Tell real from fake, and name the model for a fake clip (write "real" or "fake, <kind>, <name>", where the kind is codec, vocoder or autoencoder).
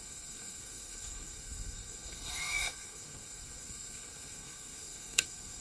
fake, codec, SNAC